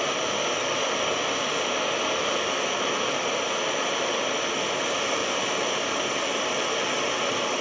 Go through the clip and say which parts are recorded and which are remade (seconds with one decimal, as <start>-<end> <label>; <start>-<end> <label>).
0.0-7.6 recorded